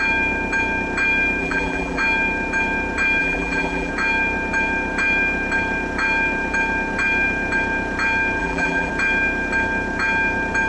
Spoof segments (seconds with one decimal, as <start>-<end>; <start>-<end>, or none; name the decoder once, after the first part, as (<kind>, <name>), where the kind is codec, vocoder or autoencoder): 1.4-2.0 (vocoder, BigVGAN v2); 3.2-3.9; 8.4-8.9